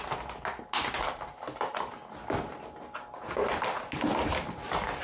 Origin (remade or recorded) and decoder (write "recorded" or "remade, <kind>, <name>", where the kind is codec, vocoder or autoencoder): recorded